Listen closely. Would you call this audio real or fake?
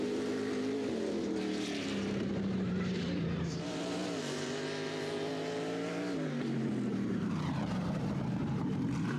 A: fake